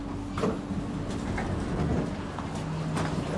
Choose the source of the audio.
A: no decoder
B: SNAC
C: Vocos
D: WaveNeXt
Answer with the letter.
A